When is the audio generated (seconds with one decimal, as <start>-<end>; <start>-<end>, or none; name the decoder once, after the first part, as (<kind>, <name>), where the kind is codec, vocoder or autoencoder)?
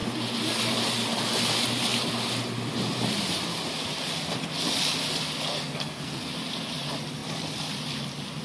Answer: 5.5-6.2 (codec, SNAC)